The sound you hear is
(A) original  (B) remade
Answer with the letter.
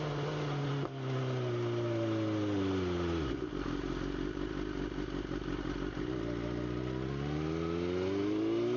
A